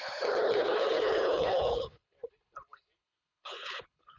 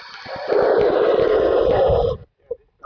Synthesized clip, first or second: first